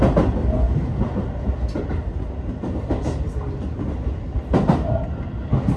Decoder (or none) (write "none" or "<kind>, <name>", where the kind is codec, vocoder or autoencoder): none